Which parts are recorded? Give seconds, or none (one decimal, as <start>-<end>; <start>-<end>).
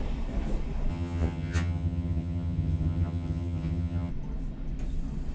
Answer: 0.0-0.9; 4.1-5.3